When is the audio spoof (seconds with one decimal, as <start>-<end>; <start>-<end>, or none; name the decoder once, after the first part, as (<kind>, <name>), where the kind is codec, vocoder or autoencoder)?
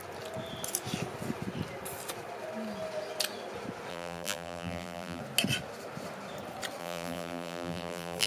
3.9-5.2 (vocoder, BigVGAN v2); 6.8-8.3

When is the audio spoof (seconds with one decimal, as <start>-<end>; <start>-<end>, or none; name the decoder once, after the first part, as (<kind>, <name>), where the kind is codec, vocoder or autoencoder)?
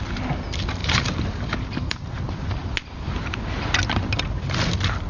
0.8-2.2 (vocoder, BigVGAN v2)